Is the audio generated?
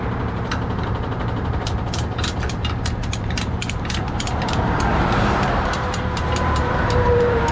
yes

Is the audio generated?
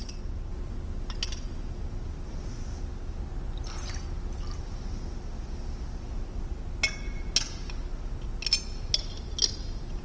no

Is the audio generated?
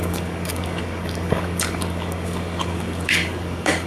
yes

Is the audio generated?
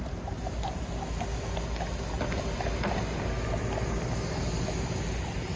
no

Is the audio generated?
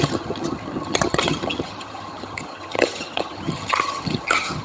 yes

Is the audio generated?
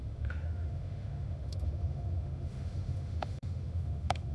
yes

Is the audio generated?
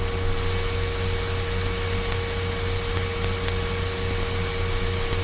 no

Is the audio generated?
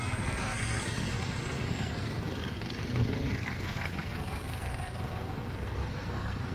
yes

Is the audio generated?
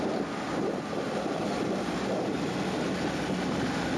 no